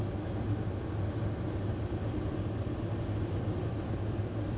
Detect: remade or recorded recorded